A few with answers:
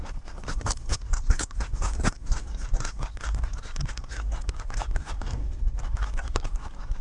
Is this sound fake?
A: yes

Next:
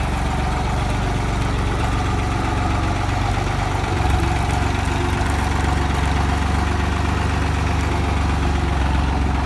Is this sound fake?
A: no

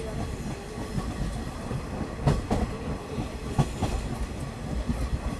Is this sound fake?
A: no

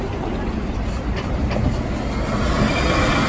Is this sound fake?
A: no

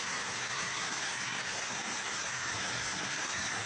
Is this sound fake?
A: yes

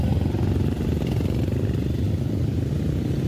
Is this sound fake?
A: no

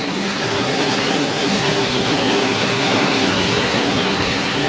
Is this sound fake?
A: yes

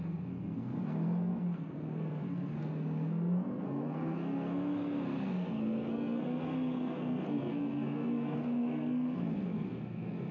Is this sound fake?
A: yes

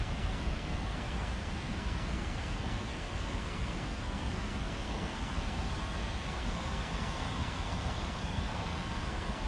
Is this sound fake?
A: yes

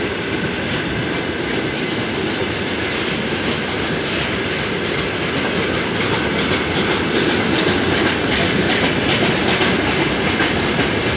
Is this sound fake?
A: no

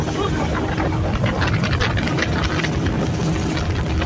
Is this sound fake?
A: no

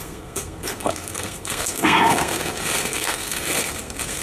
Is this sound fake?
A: yes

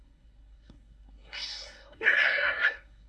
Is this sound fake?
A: yes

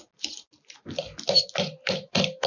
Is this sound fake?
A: no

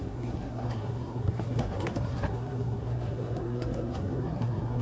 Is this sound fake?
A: yes